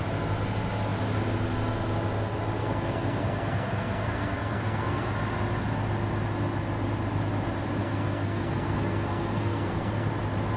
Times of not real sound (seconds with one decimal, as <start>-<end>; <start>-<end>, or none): 2.6-5.1; 7.8-10.1